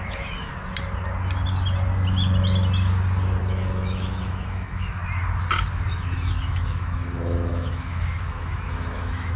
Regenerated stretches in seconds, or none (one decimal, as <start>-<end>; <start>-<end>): 0.0-0.5; 3.4-5.0; 5.9-9.4